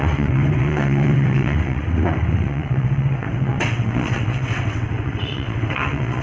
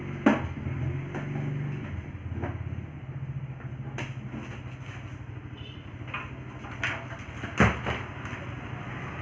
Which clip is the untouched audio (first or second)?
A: second